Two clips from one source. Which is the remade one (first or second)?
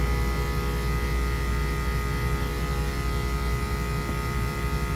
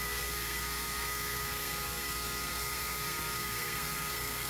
second